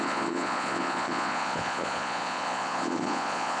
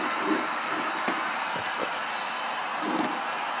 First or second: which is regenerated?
first